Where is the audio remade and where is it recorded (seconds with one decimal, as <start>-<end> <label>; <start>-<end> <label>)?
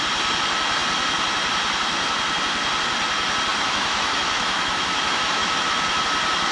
0.0-3.5 recorded; 3.5-6.0 remade; 6.0-6.5 recorded